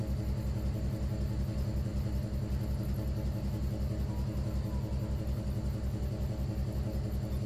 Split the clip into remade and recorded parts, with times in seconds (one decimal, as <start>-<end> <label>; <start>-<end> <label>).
0.0-7.5 recorded